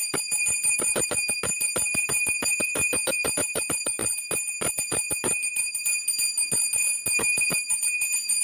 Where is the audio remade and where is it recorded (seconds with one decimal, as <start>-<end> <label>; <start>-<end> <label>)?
0.0-0.9 remade; 0.9-1.5 recorded; 1.5-4.0 remade; 4.0-4.7 recorded; 4.7-5.9 remade; 5.9-7.2 recorded; 7.2-8.4 remade